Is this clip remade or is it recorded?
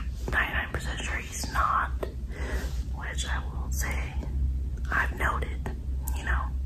recorded